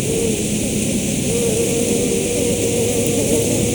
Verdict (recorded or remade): recorded